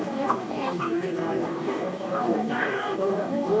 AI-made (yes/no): yes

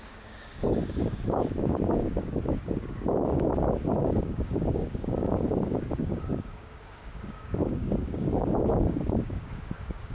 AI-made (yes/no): yes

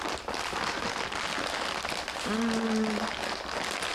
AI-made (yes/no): no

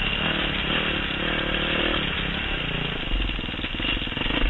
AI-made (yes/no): no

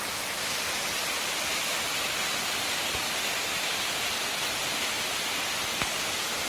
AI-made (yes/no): no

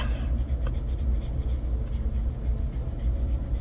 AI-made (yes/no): no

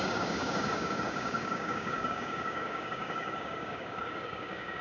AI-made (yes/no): yes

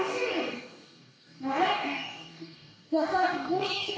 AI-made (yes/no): yes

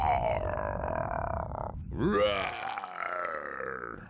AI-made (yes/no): no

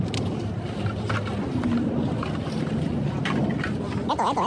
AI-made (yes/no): no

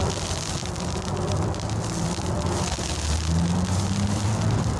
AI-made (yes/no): no